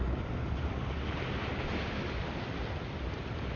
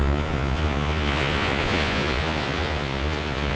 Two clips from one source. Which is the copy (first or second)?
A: second